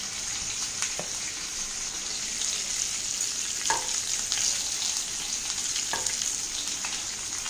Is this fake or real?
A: real